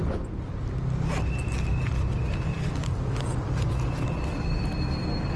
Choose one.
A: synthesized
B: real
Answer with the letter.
B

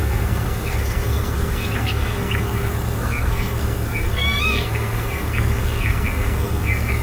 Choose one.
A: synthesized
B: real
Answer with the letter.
A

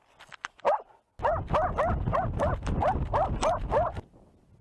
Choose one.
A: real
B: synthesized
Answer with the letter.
A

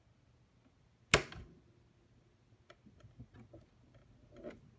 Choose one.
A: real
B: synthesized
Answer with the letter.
A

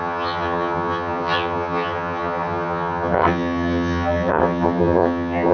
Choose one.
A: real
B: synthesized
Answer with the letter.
B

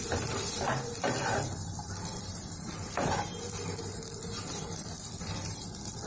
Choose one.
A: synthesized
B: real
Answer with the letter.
A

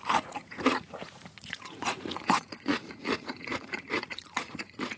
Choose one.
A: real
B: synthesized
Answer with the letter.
B